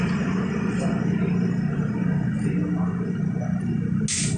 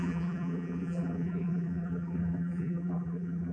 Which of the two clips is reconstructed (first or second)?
second